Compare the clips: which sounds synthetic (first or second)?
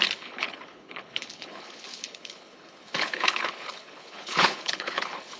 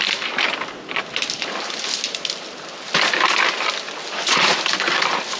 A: first